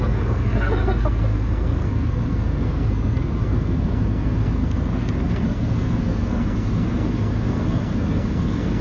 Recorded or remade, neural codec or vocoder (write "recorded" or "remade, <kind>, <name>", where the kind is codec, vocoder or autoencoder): remade, codec, SNAC